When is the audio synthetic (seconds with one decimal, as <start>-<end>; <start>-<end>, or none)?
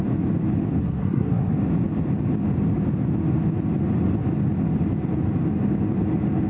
0.8-1.5